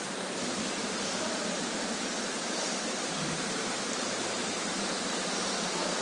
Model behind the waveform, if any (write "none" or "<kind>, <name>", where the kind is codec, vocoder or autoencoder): vocoder, BigVGAN v2